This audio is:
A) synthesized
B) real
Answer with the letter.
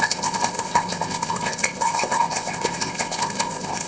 A